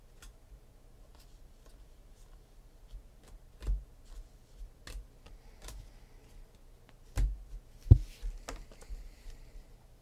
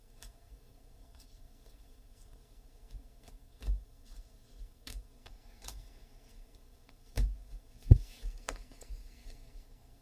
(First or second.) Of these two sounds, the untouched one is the first